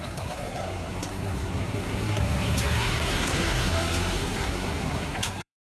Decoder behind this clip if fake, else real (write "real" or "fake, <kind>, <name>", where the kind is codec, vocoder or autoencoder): fake, codec, SNAC